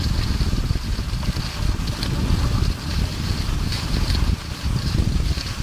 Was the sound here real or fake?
real